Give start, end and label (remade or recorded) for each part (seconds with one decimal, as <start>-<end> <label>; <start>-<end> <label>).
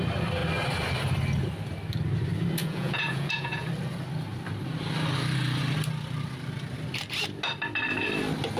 0.0-2.6 recorded; 2.6-3.7 remade; 3.7-8.6 recorded